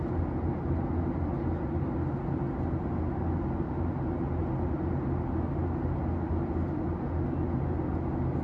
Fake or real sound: real